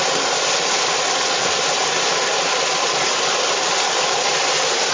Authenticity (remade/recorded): recorded